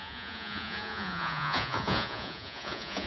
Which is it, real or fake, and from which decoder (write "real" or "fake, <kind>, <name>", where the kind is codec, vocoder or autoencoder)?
fake, vocoder, Vocos